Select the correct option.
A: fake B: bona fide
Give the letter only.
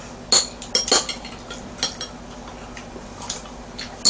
B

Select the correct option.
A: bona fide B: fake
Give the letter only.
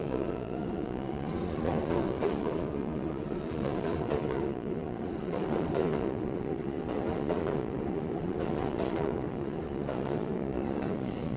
B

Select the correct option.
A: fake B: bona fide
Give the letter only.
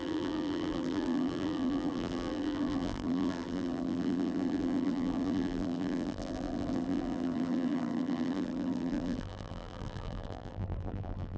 A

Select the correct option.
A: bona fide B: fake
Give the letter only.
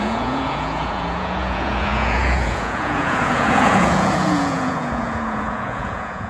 B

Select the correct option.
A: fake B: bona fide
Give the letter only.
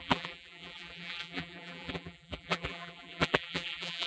A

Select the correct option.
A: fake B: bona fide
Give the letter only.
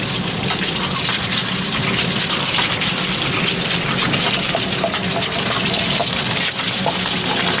B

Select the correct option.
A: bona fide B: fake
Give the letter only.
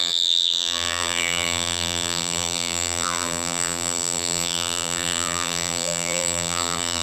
B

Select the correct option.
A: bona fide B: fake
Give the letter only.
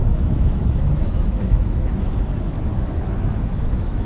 B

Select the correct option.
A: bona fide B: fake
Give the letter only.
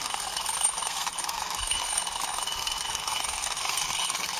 B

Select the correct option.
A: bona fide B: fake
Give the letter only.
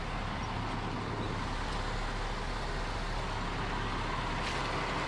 A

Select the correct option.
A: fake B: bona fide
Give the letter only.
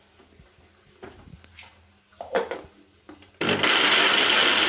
B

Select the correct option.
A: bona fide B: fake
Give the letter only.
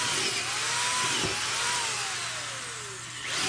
A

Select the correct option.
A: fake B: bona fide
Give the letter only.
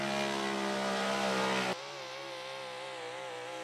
B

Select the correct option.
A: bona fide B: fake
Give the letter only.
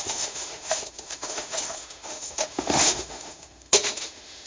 B